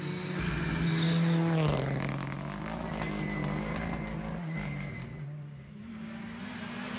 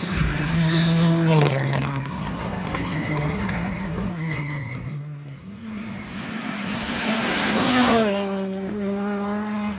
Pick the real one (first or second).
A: first